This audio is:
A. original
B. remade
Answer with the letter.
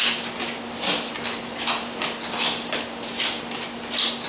A